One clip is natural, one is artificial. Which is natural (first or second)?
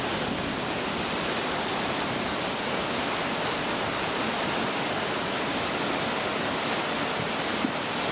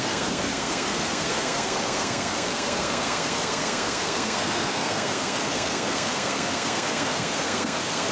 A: first